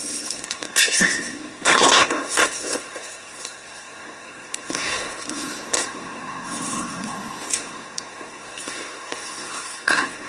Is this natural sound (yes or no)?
no